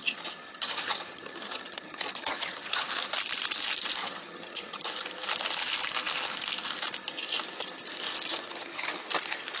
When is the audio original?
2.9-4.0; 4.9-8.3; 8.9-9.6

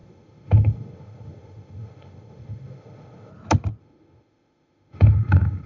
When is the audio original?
3.3-3.8

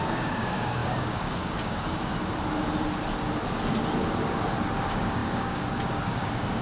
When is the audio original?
2.1-4.7

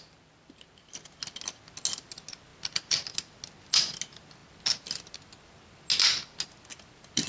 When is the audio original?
0.0-7.3

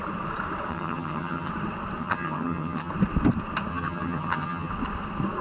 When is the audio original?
0.0-0.7; 1.5-2.0; 2.9-3.7; 4.7-5.4

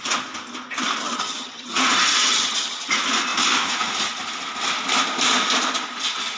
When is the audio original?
0.0-1.0; 2.9-6.4